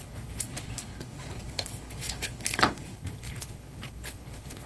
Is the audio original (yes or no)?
no